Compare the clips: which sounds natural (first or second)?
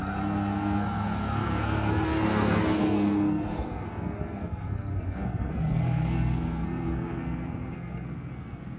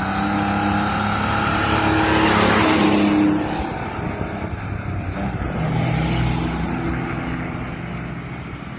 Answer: second